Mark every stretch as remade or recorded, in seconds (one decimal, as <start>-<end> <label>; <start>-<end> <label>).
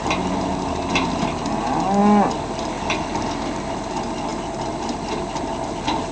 0.0-6.1 recorded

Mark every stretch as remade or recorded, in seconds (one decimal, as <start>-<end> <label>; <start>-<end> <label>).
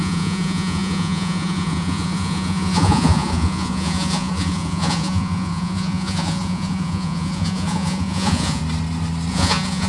0.0-8.6 remade; 8.6-9.3 recorded; 9.3-9.9 remade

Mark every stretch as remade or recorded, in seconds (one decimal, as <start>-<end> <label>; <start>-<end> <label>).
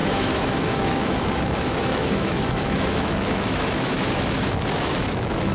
0.0-5.5 remade